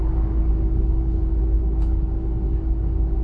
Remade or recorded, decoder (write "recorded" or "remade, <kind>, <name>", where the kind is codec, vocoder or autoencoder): remade, codec, DAC